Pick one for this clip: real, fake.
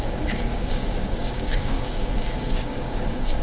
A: fake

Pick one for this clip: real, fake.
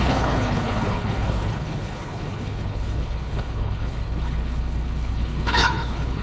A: fake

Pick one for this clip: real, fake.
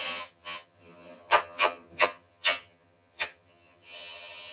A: fake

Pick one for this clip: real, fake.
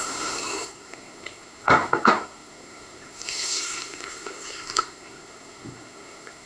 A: fake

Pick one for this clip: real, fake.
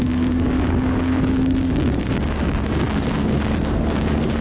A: fake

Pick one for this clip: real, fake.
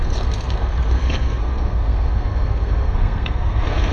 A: fake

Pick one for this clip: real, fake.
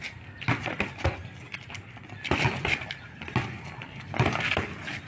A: real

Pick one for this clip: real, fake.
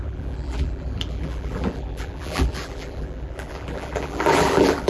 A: fake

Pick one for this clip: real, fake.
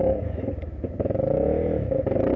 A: fake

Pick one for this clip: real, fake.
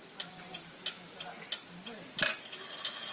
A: real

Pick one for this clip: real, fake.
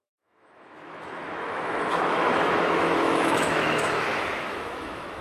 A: fake